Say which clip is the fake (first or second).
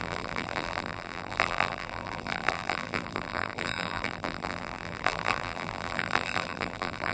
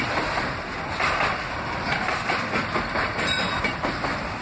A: first